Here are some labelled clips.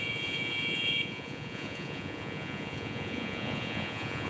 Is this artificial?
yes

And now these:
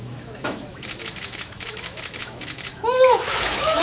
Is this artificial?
yes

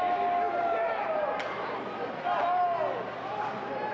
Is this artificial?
no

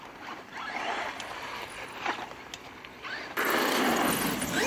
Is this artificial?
no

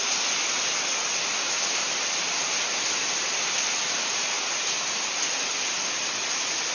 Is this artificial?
no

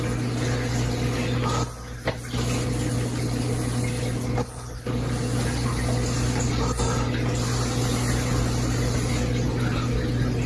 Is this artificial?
no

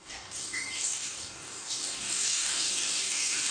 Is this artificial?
yes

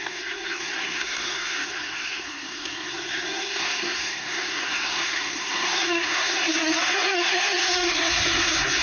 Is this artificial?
yes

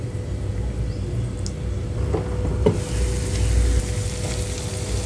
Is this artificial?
no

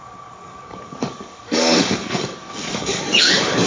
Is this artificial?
yes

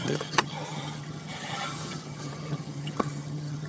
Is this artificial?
yes